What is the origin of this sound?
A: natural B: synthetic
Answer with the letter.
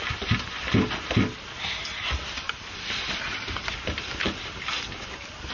A